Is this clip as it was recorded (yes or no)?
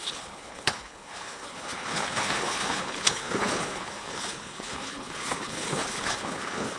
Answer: no